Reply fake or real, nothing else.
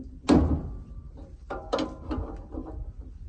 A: real